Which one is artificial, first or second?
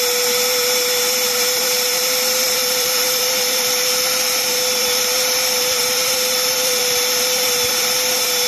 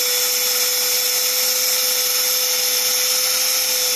first